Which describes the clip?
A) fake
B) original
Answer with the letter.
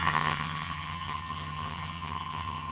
A